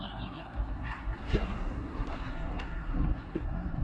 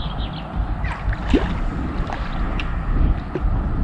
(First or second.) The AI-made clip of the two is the first